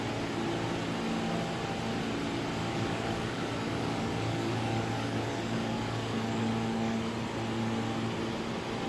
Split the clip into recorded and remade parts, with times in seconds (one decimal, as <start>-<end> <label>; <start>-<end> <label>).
0.0-2.6 recorded; 2.6-7.1 remade; 7.1-8.9 recorded